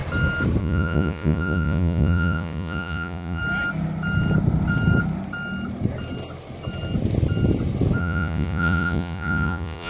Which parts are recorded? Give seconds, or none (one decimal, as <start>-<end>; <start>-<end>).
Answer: 0.0-0.6; 3.4-8.0